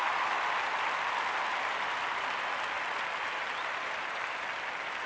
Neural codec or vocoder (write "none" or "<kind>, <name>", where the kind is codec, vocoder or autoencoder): vocoder, BigVGAN v2